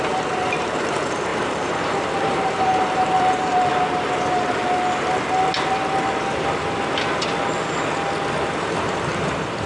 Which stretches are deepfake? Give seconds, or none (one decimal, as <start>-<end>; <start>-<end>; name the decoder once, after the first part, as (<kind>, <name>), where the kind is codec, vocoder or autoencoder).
0.0-3.7 (vocoder, BigVGAN v2); 8.4-9.7